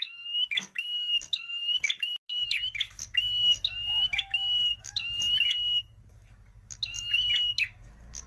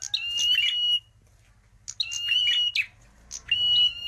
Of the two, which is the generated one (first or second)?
first